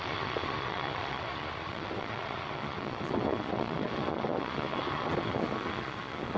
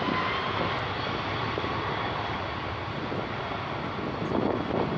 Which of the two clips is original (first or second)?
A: second